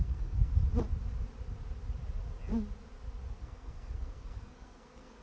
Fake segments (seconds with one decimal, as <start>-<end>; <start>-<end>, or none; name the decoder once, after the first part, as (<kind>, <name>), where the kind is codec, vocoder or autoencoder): 0.0-0.5 (codec, SNAC); 3.3-5.2